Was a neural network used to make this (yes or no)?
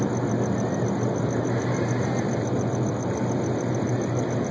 no